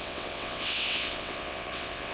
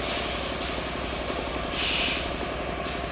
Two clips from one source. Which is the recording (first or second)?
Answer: second